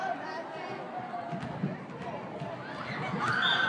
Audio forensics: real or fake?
real